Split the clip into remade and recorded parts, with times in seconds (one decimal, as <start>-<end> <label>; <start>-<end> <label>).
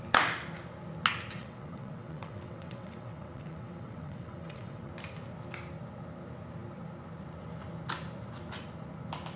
0.0-1.4 recorded; 1.4-4.9 remade; 4.9-9.4 recorded